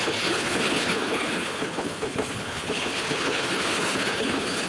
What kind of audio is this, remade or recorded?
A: remade